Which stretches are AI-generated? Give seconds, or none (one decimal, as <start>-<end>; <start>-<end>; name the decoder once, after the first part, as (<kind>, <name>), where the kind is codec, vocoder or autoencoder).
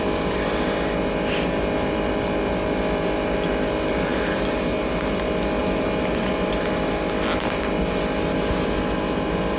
4.1-5.1 (vocoder, BigVGAN v2); 5.6-6.7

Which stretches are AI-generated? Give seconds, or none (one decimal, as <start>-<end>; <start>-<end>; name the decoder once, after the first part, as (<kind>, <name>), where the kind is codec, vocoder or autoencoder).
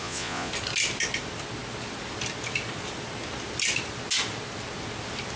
0.0-0.5 (vocoder, Vocos)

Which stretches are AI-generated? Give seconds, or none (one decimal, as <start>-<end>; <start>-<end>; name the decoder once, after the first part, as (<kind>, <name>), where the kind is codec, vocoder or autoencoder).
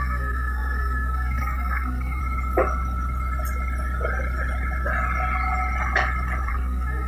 0.0-2.2 (codec, SNAC); 6.5-7.1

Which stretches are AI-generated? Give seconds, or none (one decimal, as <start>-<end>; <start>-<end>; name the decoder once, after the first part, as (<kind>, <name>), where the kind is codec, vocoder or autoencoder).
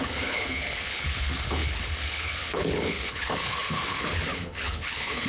0.0-5.3 (codec, HILCodec)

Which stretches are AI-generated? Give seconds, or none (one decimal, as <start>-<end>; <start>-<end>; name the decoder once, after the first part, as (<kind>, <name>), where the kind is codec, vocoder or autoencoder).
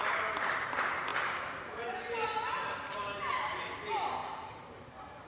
4.2-5.3 (vocoder, BigVGAN v2)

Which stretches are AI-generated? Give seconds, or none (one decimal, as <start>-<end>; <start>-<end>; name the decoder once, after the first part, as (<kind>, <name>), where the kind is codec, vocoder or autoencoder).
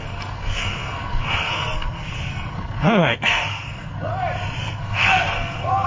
0.0-4.1 (codec, SNAC); 4.6-5.9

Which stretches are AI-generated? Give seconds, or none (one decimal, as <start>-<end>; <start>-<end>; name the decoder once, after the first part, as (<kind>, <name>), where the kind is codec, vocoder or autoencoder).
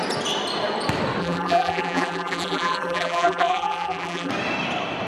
1.2-4.3 (vocoder, BigVGAN v2)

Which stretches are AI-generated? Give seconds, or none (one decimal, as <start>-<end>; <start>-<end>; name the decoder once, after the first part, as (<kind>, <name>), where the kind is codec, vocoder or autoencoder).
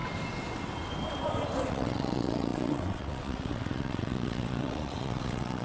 1.7-5.6 (vocoder, WaveNeXt)